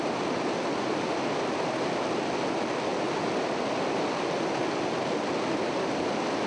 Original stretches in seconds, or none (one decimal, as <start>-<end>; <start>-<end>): 0.0-6.5

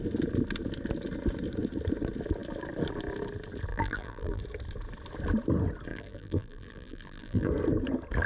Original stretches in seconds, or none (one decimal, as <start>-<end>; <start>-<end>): 0.0-3.7; 4.4-5.9; 7.5-8.3

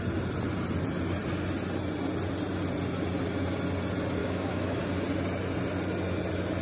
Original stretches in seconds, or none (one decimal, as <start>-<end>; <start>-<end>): 0.0-4.2; 4.8-6.6